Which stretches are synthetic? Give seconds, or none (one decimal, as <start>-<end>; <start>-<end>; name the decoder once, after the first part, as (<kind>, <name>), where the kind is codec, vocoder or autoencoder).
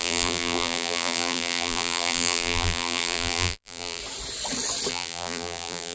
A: 0.0-4.0 (vocoder, BigVGAN v2); 4.9-5.9